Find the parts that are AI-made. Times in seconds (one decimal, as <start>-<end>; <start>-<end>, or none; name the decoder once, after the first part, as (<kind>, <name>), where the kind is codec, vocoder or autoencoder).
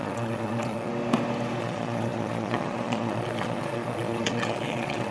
0.0-0.9 (vocoder, Vocos); 1.6-5.1